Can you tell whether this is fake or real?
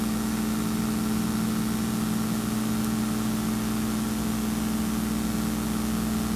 real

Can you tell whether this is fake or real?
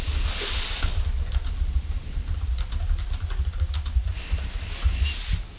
real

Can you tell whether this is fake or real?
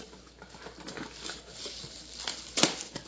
real